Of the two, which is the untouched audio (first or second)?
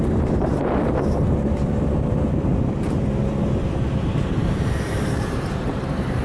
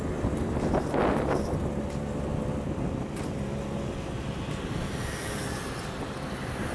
second